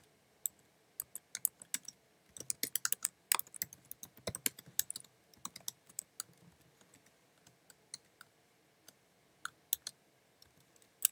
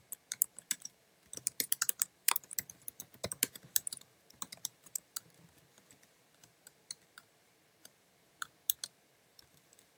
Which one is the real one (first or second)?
first